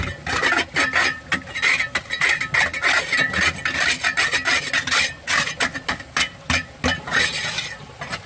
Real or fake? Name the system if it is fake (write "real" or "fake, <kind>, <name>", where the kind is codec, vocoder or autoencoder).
real